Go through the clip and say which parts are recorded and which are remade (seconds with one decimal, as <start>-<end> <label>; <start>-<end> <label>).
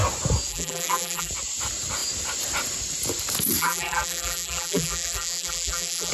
0.0-0.5 recorded; 0.5-1.3 remade; 1.3-3.6 recorded; 3.6-6.1 remade